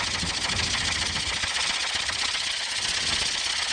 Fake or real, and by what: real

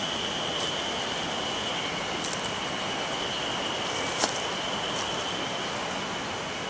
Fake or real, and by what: real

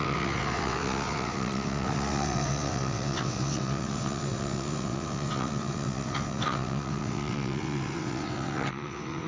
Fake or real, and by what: fake, vocoder, WaveNeXt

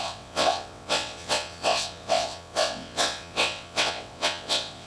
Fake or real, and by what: fake, vocoder, WaveNeXt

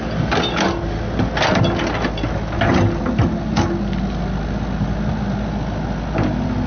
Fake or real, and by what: real